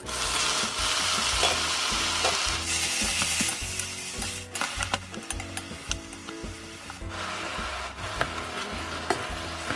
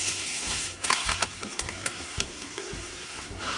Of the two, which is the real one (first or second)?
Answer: first